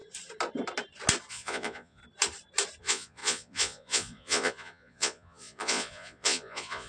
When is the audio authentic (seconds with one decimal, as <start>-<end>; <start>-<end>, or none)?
0.0-1.3; 2.0-2.8